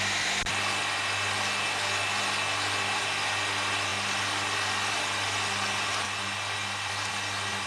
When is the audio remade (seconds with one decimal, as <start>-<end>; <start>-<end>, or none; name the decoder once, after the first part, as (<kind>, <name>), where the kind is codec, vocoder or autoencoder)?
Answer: none